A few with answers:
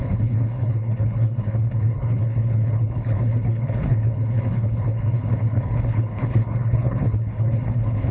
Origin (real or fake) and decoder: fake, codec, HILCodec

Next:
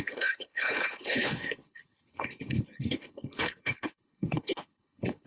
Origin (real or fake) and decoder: fake, codec, HILCodec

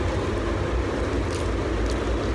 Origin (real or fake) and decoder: real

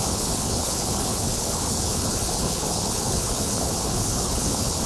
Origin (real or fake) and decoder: fake, codec, HILCodec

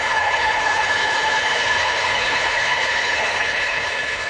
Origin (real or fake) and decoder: fake, codec, HILCodec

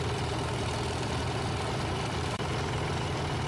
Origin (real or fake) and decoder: real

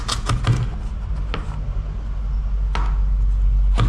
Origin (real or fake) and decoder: real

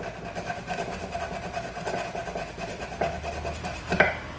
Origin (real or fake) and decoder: real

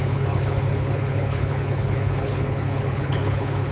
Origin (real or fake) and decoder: fake, codec, HILCodec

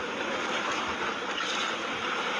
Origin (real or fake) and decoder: real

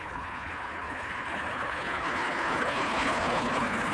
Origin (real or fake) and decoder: fake, codec, HILCodec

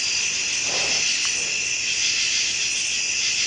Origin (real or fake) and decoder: real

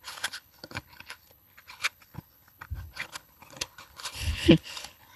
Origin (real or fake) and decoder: fake, codec, HILCodec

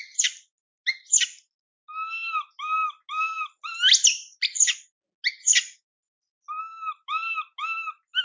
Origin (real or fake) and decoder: real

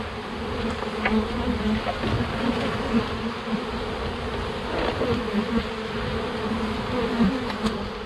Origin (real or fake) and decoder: real